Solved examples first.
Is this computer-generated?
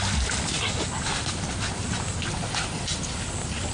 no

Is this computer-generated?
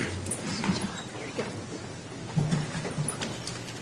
no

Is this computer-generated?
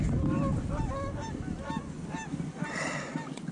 no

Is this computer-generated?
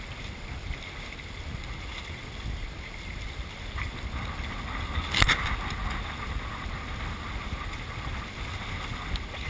no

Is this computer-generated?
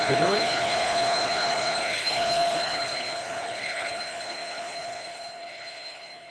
yes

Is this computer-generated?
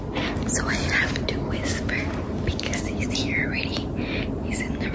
no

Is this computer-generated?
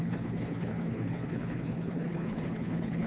yes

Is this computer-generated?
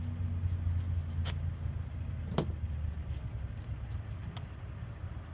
no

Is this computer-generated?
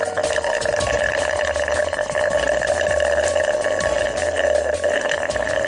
no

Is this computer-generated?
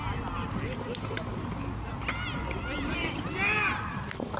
no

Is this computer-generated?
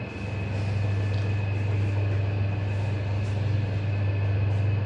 no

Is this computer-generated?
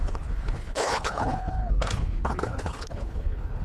yes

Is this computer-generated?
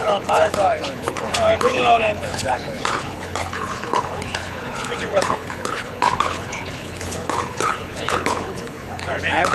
yes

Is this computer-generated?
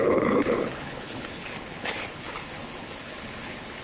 yes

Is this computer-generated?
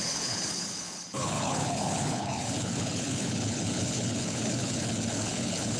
yes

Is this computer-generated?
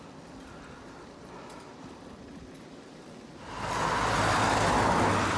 no